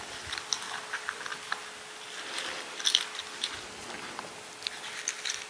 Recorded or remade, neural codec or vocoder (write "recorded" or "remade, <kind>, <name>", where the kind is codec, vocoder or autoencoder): recorded